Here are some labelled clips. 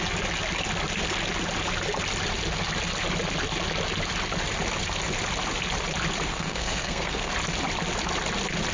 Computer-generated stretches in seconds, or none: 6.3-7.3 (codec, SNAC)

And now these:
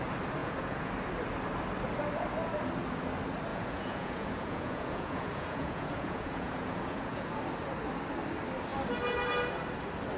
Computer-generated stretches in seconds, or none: 0.4-0.9 (vocoder, Vocos); 3.5-7.4

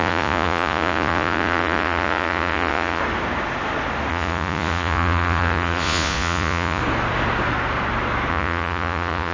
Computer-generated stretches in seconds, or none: 0.0-3.0 (vocoder, Vocos); 4.1-6.8; 8.3-9.3